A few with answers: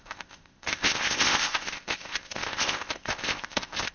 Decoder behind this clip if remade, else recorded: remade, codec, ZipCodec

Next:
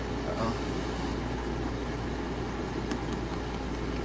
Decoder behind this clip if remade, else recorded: recorded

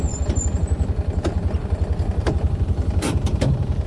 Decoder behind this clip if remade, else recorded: remade, vocoder, BigVGAN v2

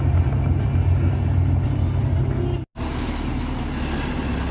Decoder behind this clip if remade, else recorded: recorded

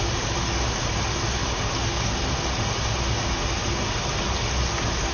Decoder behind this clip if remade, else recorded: recorded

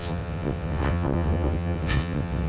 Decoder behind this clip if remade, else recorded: remade, vocoder, WaveNeXt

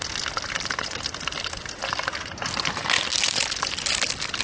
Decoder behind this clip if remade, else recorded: recorded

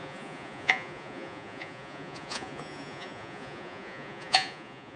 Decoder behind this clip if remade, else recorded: remade, vocoder, Vocos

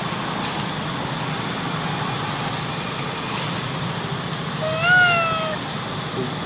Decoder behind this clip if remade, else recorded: recorded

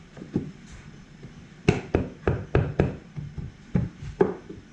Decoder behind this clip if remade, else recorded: remade, vocoder, BigVGAN v2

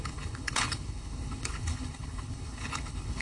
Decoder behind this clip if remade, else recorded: remade, codec, HILCodec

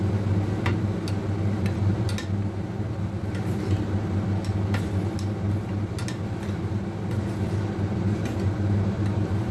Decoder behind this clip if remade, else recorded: recorded